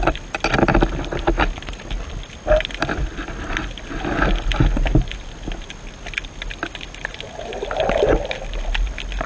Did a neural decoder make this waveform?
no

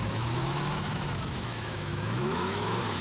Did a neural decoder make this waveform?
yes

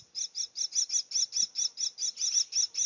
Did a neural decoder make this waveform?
no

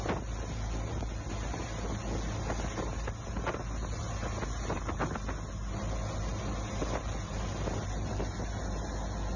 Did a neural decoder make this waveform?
no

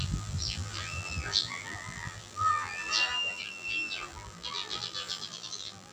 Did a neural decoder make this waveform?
yes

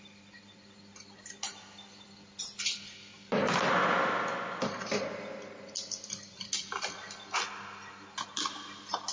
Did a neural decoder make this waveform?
no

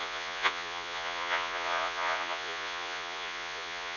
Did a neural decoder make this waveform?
yes